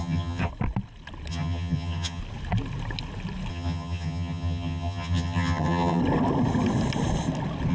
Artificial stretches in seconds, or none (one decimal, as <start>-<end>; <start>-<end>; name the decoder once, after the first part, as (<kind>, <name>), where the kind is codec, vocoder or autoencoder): 0.0-0.5 (vocoder, HiFi-GAN); 1.3-2.2; 3.5-6.0